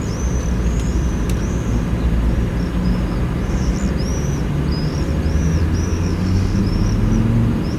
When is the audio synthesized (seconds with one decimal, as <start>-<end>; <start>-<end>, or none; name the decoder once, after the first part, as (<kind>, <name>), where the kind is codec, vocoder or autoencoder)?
5.9-6.6 (codec, DAC)